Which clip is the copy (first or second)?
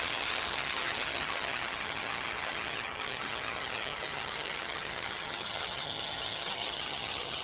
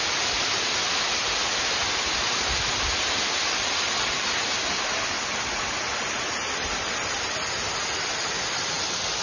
first